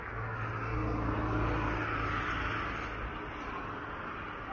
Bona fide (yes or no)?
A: yes